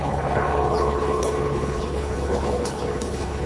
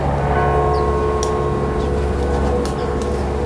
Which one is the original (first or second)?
second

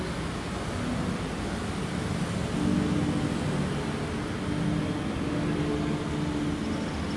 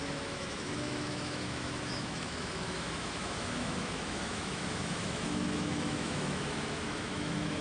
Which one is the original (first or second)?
first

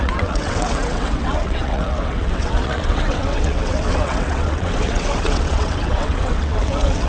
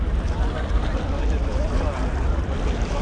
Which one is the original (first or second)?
second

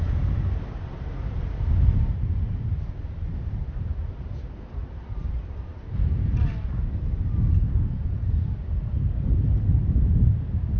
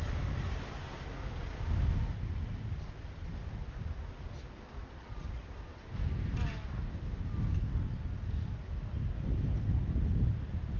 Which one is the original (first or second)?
second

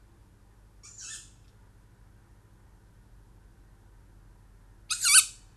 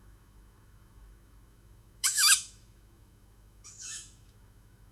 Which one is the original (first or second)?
first